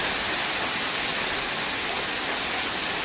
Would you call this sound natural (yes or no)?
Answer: yes